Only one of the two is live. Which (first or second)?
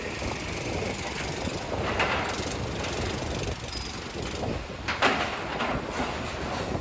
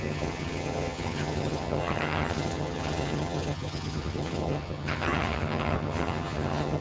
first